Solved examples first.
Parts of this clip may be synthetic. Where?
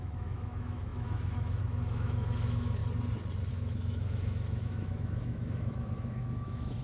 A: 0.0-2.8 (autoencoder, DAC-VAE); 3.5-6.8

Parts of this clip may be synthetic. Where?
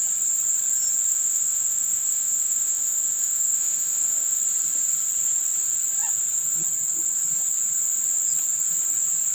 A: 1.1-4.4 (autoencoder, DAC-VAE)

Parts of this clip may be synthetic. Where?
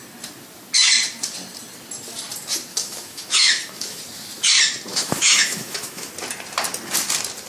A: 2.7-4.0 (autoencoder, DAC-VAE); 4.9-6.1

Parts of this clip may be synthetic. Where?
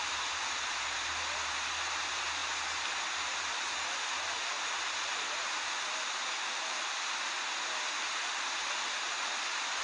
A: none